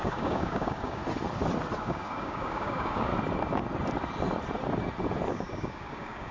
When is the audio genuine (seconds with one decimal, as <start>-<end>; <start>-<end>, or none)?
1.0-1.8; 3.1-5.3